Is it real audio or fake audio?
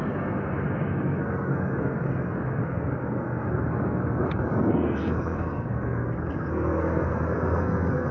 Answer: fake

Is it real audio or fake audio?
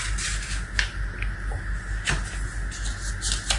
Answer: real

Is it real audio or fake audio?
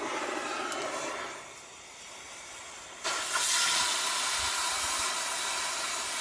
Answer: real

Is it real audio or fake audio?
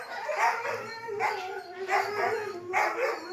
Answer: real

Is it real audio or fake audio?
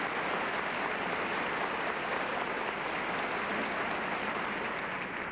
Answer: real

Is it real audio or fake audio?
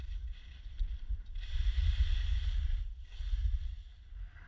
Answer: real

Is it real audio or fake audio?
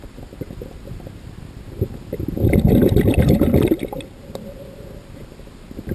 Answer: fake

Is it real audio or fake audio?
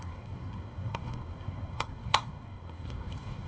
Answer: fake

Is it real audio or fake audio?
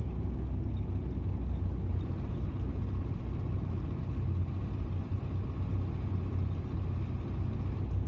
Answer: real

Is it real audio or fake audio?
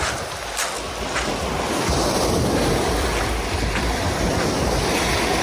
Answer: real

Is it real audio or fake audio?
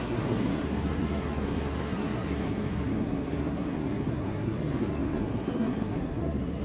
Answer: fake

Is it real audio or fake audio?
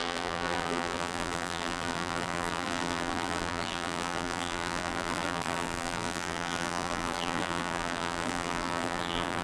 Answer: fake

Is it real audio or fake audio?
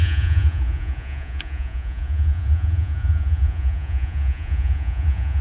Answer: fake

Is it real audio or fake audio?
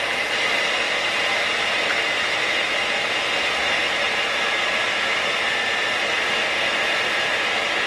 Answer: real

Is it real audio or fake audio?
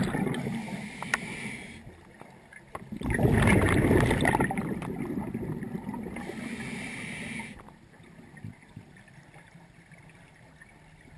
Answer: real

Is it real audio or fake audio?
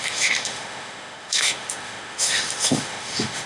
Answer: fake